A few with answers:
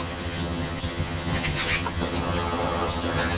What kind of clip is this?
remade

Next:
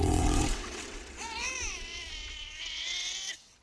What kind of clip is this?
remade